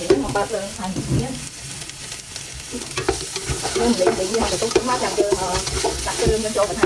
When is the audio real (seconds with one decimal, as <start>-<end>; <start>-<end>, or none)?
0.0-6.9